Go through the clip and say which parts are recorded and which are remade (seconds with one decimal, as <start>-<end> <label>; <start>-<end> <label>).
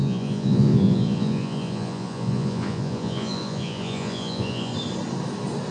0.0-4.7 remade; 4.7-5.7 recorded